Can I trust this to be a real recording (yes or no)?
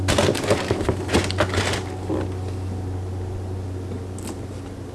yes